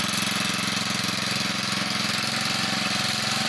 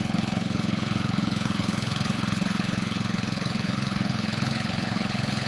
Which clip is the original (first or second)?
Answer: first